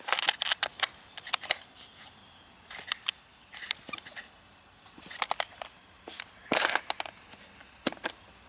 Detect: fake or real real